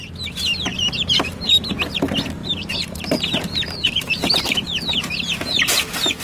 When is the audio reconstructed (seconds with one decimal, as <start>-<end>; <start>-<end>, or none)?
0.7-1.8; 2.4-4.5